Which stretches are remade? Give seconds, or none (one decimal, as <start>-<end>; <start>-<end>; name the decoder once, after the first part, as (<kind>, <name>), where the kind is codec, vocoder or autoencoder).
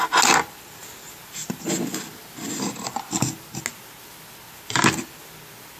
none